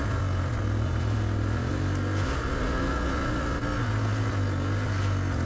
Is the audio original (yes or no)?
yes